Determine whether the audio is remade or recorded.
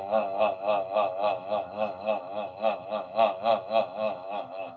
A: remade